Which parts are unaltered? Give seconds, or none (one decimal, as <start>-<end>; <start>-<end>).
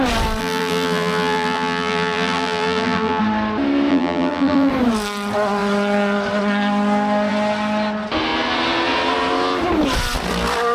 0.0-0.4; 3.2-3.9; 4.7-10.7